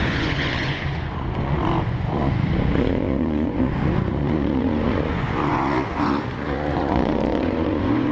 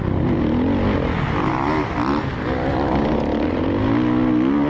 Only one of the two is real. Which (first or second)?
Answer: second